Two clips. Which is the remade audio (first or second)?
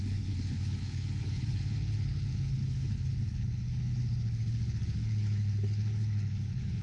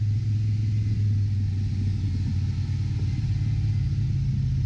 first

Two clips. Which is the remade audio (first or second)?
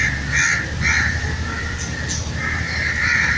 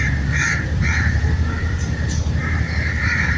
second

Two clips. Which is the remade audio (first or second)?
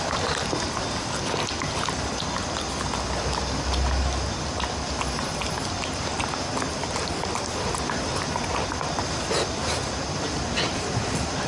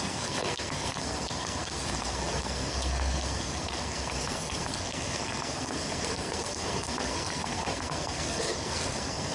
second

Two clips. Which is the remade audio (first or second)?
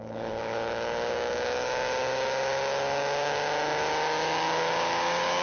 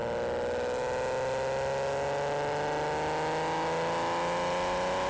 first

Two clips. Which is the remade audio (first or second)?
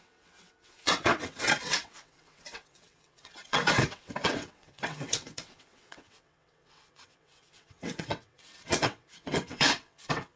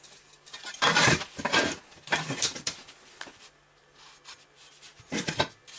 first